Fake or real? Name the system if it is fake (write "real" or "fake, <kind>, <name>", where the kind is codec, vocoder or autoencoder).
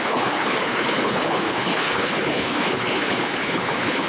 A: fake, codec, HILCodec